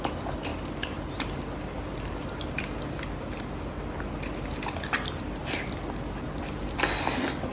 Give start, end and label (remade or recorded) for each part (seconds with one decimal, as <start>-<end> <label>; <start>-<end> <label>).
0.0-7.5 recorded